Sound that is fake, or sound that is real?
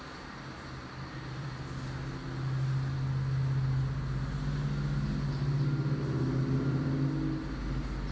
real